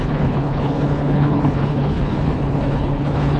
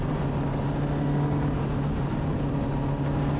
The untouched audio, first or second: second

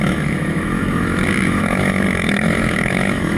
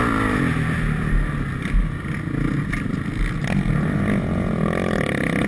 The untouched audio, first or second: second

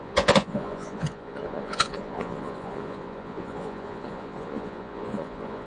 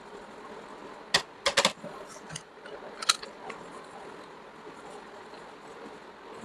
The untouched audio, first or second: second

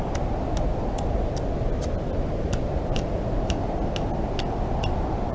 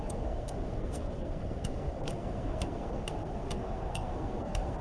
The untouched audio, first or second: first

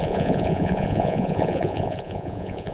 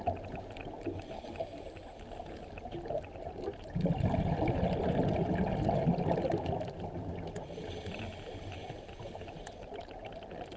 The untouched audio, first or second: second